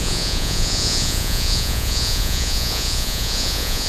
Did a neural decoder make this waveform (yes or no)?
yes